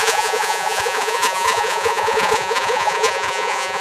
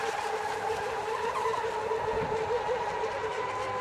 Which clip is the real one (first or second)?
second